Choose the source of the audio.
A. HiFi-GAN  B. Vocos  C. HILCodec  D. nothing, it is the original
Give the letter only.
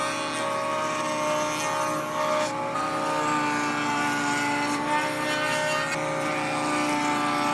D